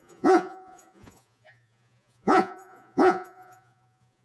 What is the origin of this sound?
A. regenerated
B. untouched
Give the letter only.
A